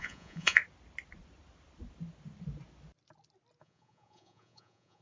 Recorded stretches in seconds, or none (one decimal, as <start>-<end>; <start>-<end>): 0.6-3.6

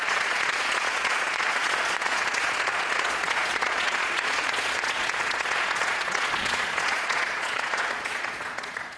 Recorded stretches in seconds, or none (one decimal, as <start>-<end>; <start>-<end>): none

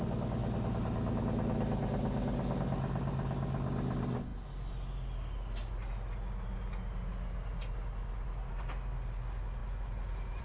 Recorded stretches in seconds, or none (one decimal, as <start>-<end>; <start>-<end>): 0.0-10.4